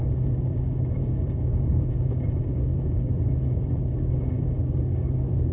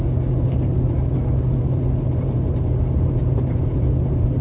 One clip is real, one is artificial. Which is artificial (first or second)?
first